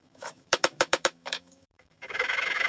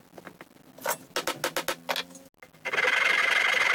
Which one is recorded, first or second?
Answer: second